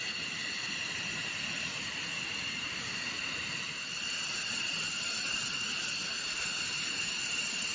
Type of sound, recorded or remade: recorded